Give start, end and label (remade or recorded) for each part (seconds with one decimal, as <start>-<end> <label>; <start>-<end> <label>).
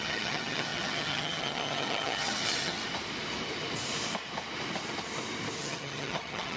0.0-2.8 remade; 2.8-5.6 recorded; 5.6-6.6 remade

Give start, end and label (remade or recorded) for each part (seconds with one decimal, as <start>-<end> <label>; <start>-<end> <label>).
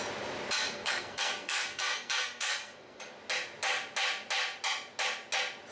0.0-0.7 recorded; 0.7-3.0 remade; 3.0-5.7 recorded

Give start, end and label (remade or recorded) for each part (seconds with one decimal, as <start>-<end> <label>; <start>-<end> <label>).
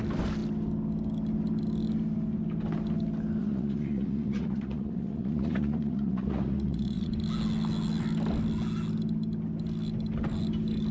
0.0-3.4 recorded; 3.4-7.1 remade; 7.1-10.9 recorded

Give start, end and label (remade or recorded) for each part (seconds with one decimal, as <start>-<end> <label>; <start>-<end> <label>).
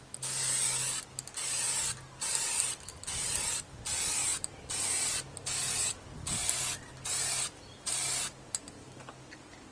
0.0-9.7 recorded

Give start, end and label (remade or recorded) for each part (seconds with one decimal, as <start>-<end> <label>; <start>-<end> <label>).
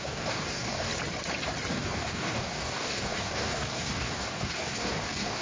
0.0-0.9 remade; 0.9-1.7 recorded; 1.7-5.4 remade